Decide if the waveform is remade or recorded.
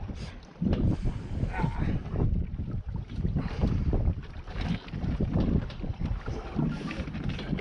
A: recorded